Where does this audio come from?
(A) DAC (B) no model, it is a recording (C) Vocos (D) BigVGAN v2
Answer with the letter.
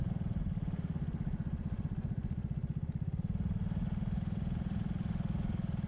B